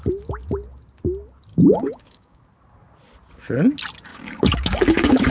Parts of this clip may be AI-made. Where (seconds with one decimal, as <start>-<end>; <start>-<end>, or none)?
1.5-2.4; 4.1-5.3